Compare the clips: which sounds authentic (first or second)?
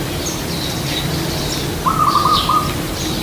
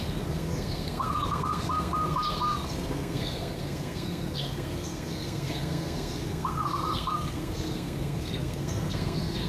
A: first